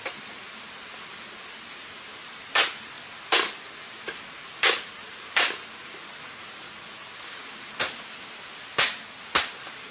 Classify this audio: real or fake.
real